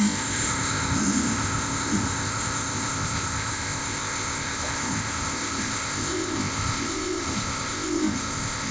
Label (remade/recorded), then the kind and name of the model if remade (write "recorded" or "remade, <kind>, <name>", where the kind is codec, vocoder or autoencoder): remade, codec, ZipCodec